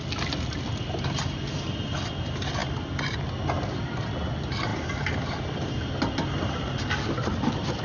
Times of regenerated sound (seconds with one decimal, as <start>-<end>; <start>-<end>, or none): none